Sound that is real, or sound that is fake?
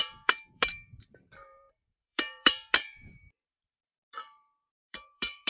fake